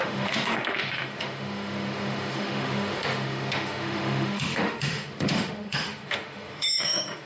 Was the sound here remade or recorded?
remade